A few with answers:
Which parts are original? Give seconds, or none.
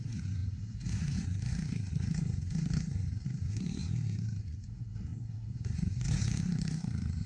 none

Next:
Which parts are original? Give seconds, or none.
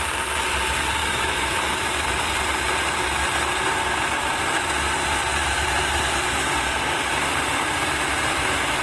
0.0-1.0; 1.6-8.8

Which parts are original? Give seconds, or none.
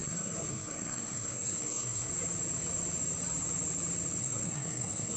2.1-4.2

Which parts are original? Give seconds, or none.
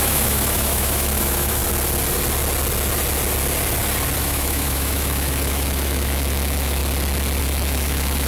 1.6-4.2; 6.8-7.4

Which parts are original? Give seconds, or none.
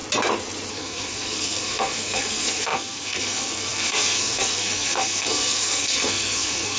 0.0-0.7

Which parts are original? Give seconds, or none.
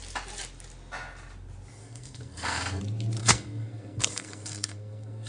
0.0-1.8; 2.8-3.2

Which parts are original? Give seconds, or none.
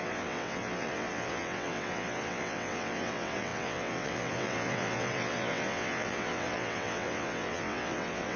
none